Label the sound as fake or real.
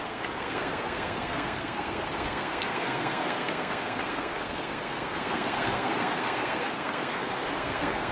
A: fake